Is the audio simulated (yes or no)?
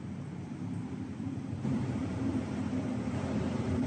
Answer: yes